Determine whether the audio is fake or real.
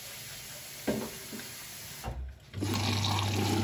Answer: real